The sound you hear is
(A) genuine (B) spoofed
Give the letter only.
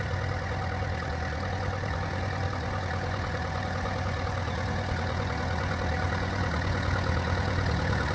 B